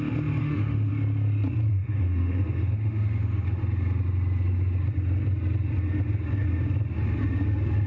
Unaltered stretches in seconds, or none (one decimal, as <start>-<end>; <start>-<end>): 0.0-0.4; 0.9-1.7; 3.6-7.9